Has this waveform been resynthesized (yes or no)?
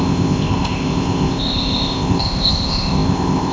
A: yes